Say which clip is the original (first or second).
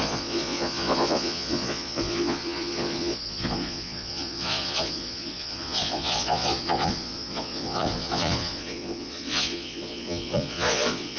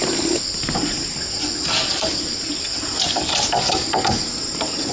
second